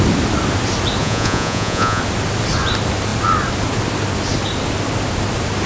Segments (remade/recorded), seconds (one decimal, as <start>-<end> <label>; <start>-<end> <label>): 0.0-1.0 recorded; 1.0-2.0 remade; 2.0-5.7 recorded